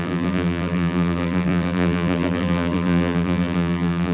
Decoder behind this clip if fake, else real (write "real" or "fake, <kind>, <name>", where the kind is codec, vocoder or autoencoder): fake, vocoder, BigVGAN v2